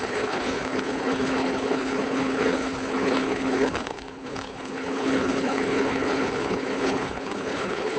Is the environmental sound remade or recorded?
remade